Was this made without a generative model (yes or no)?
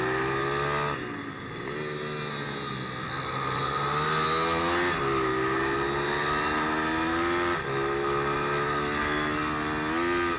yes